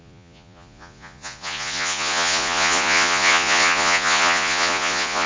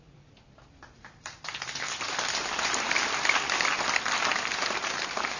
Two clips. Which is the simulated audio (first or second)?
first